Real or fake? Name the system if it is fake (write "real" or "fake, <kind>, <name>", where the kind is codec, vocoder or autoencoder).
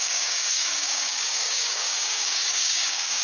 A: fake, codec, DAC